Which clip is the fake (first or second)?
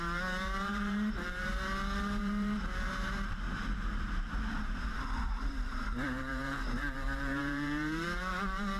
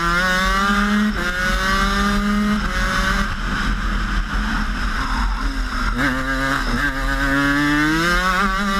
first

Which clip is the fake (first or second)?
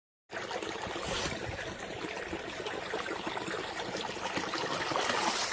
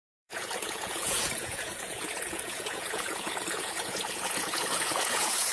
second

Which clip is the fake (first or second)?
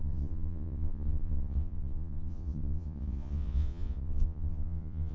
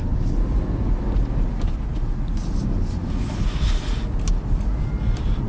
first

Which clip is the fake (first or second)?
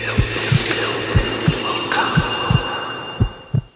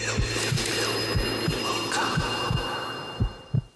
first